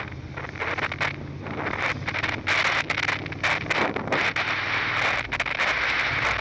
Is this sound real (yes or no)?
yes